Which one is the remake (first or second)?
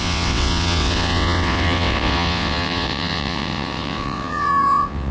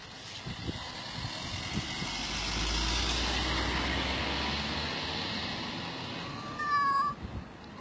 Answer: first